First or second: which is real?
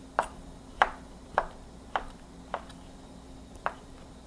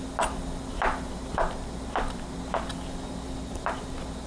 second